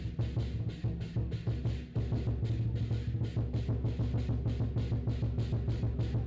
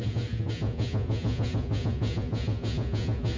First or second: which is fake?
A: second